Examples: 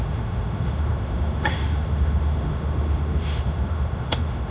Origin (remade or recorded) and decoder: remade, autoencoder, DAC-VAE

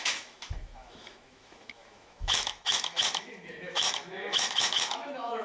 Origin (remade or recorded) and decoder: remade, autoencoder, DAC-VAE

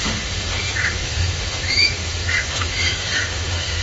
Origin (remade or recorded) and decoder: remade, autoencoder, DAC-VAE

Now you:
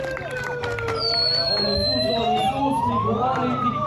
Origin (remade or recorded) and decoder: recorded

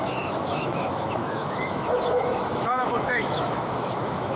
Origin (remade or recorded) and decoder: remade, autoencoder, DAC-VAE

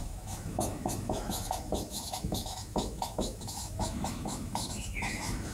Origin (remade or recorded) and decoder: remade, autoencoder, DAC-VAE